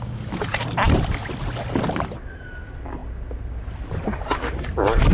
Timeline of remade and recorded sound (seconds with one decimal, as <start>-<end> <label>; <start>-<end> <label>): 0.0-5.1 recorded